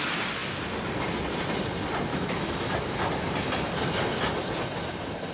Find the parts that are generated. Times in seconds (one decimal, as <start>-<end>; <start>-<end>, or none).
2.1-2.7